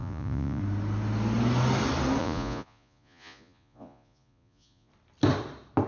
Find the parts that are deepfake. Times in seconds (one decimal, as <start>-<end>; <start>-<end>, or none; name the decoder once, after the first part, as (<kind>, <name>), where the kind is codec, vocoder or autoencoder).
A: 0.0-0.6 (vocoder, Vocos); 2.2-4.9